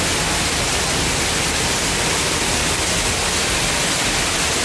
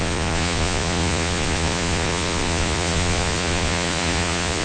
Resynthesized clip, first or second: second